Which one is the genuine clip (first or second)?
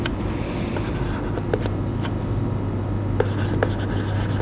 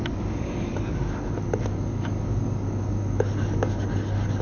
first